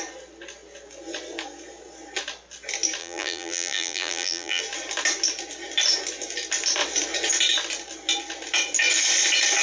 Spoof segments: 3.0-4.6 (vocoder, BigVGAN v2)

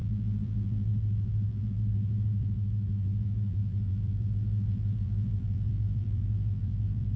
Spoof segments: 0.0-7.2 (vocoder, BigVGAN v2)

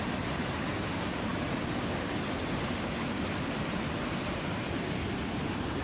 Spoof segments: 1.3-4.8 (vocoder, BigVGAN v2)

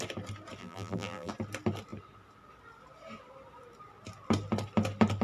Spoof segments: 0.6-1.3 (vocoder, BigVGAN v2)

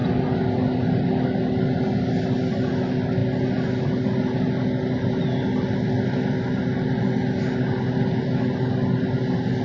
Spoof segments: none